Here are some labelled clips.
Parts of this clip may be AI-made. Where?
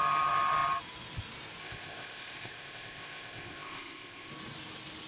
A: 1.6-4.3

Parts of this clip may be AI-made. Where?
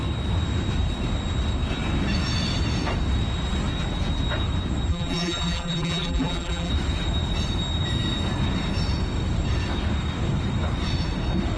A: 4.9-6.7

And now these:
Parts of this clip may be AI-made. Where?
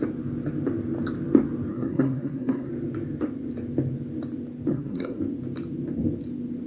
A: 1.7-2.7; 4.7-5.2